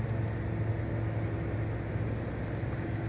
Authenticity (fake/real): real